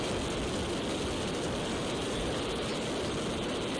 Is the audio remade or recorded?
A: recorded